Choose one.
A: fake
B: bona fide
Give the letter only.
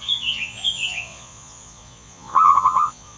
A